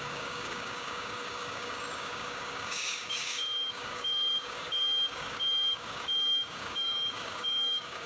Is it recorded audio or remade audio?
remade